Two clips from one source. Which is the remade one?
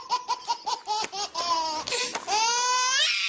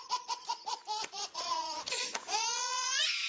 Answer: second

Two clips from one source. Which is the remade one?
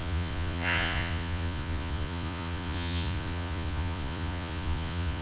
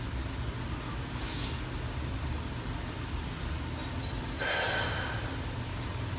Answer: first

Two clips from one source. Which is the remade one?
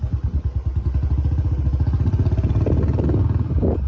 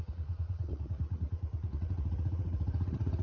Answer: second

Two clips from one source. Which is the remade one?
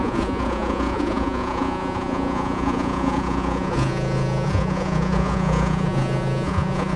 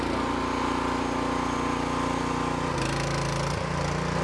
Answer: first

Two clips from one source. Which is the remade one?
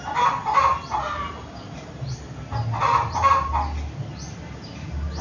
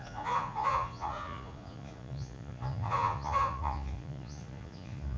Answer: second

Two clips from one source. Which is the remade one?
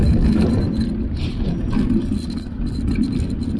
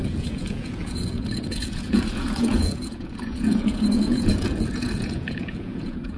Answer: second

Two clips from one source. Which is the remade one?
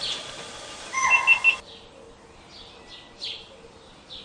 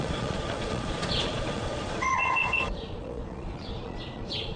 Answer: second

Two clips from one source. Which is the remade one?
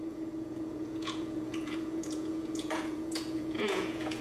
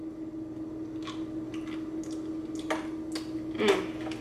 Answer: first